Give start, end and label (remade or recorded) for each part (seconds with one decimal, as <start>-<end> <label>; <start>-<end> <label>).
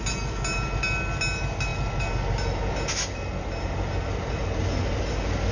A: 0.0-5.5 recorded